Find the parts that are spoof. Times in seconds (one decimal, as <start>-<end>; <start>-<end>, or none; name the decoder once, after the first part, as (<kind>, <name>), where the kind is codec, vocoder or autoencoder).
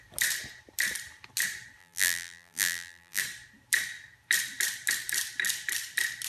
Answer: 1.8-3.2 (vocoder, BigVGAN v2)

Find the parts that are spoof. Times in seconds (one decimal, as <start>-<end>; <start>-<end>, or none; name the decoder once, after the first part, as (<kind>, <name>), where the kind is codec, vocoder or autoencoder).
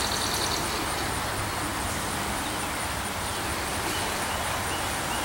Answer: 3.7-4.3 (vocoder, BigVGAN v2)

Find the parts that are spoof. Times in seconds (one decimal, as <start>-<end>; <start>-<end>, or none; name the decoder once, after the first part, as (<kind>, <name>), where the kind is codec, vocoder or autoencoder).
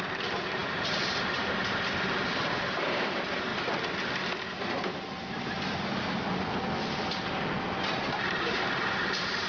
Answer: 0.0-3.5 (vocoder, BigVGAN v2); 7.9-9.5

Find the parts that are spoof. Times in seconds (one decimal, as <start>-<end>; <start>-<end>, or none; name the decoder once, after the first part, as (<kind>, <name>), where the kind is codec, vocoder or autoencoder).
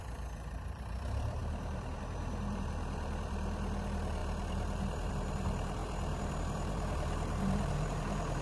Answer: 0.0-8.4 (vocoder, BigVGAN v2)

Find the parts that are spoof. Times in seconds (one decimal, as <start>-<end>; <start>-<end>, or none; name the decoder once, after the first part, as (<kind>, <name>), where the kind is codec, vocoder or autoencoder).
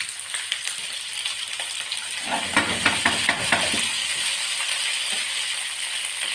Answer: 0.0-4.0 (vocoder, BigVGAN v2)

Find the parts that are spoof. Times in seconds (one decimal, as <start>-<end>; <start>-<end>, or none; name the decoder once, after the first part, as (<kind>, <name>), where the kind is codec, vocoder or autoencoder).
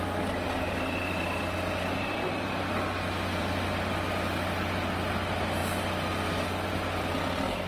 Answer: none